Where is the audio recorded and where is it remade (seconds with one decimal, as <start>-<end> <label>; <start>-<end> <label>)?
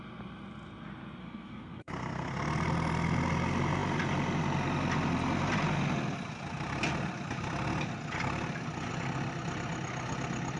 0.0-1.2 recorded; 1.2-2.3 remade; 2.3-10.6 recorded